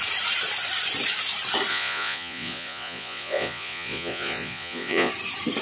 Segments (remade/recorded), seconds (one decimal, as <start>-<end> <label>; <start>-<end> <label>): 0.0-1.7 recorded; 1.7-5.1 remade; 5.1-5.6 recorded